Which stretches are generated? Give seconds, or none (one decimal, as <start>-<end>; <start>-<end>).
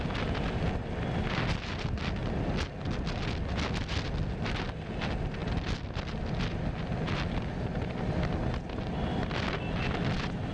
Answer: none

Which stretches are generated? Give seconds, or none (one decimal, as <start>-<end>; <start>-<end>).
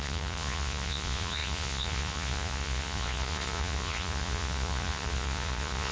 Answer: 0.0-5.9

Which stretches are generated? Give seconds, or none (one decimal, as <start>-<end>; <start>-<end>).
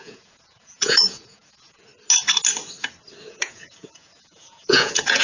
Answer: 0.0-1.9; 3.3-5.2